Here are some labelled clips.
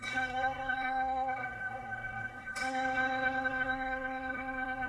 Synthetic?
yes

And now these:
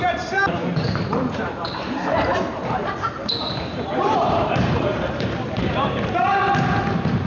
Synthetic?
yes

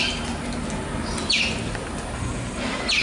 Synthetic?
no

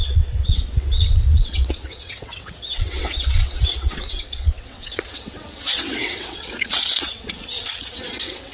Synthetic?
yes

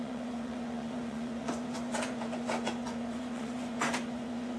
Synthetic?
yes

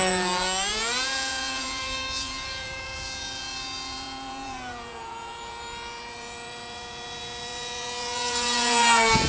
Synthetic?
yes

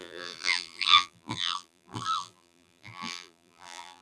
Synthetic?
yes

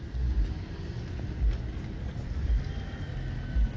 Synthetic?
no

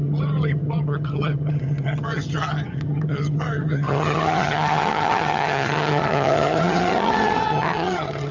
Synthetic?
yes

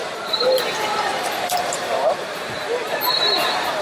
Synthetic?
yes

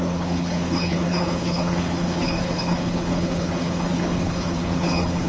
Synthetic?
yes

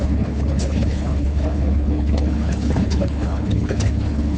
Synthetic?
yes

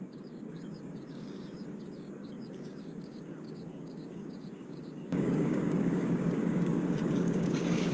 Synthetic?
yes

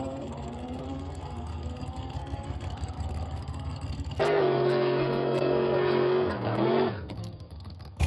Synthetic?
yes